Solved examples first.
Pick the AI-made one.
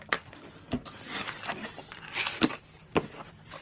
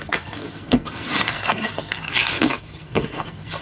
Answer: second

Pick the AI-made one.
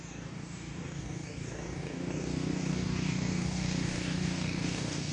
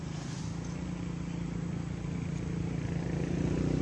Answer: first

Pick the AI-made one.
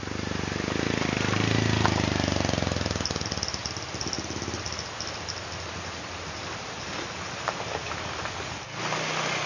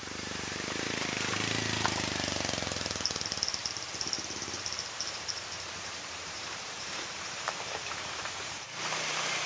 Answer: second